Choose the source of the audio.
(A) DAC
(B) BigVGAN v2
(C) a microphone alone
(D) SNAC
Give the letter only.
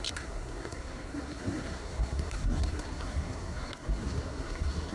D